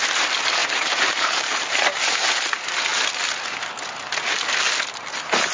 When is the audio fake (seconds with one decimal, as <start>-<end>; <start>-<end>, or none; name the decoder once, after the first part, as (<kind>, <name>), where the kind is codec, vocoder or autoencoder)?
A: 0.6-2.1 (vocoder, BigVGAN v2)